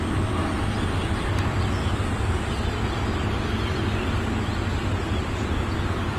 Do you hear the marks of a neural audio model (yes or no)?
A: no